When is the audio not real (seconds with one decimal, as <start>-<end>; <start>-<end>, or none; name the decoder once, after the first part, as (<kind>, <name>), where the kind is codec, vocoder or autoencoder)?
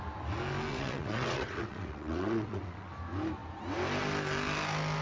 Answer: 0.7-2.9 (vocoder, WaveNeXt)